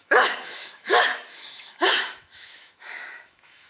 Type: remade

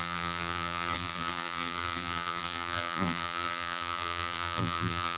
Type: remade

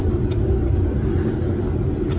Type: recorded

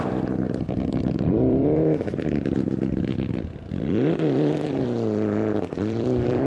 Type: remade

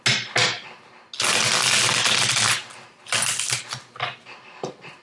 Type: recorded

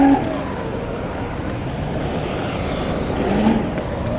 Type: recorded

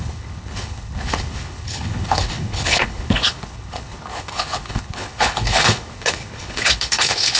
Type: remade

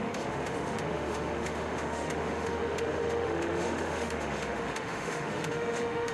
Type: remade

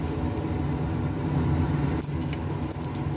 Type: recorded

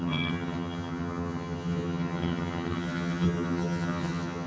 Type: remade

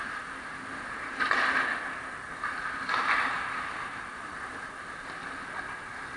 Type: recorded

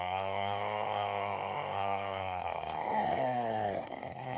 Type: remade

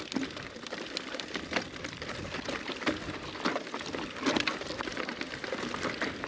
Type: remade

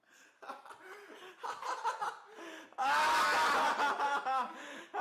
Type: recorded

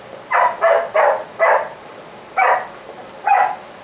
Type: recorded